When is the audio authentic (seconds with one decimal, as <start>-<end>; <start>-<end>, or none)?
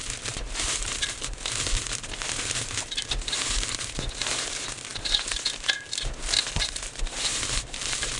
0.0-7.3